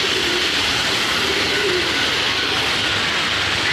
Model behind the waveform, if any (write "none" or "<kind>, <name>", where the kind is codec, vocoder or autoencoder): none